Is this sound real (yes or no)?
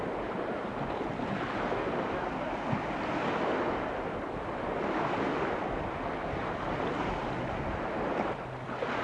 yes